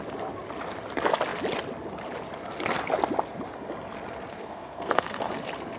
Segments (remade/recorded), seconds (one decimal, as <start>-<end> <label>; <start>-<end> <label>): 0.0-4.3 recorded; 4.3-5.3 remade; 5.3-5.8 recorded